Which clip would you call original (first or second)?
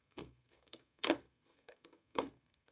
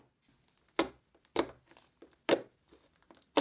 second